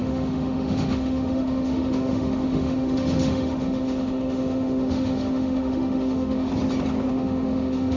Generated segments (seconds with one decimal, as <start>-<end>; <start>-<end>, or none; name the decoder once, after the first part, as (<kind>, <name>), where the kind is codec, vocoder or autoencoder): 0.0-6.5 (autoencoder, DAC-VAE); 7.1-8.0